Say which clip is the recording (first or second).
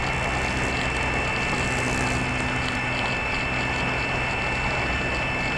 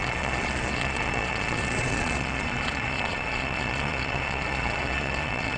first